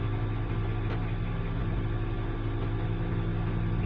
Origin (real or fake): real